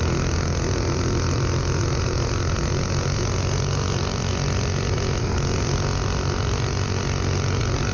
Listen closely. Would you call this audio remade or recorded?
recorded